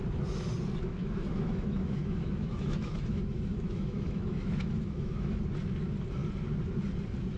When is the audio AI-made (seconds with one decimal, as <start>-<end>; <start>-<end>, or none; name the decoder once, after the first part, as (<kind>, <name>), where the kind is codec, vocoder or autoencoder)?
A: 1.0-5.4 (autoencoder, DAC-VAE)